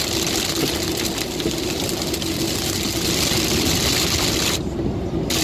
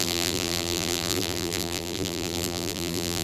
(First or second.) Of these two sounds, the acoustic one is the first